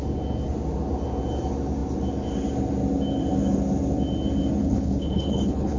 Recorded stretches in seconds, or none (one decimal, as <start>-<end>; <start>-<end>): 0.0-4.6